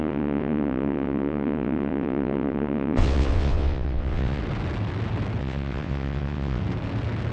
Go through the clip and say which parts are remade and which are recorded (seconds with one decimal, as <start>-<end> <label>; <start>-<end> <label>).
0.0-4.4 remade; 4.4-5.4 recorded; 5.4-6.6 remade; 6.6-7.3 recorded

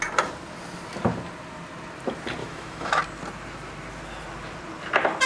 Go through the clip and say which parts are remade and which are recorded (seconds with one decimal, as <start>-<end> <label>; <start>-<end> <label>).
0.0-2.4 recorded; 2.4-3.0 remade; 3.0-5.3 recorded

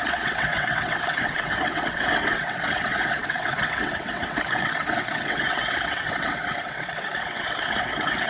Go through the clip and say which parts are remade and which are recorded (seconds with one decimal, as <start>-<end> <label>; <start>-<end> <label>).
0.0-8.3 remade

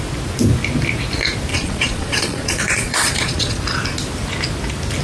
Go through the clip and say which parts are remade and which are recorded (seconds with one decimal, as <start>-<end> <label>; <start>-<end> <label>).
0.0-1.5 recorded; 1.5-3.6 remade; 3.6-5.0 recorded

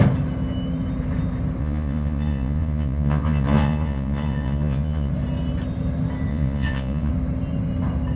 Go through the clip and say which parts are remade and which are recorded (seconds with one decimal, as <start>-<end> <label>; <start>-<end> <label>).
0.0-1.6 recorded; 1.6-5.1 remade; 5.1-6.3 recorded; 6.3-7.1 remade; 7.1-8.2 recorded